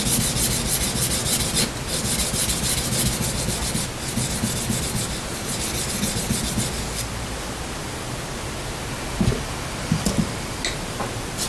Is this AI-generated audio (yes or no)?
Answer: no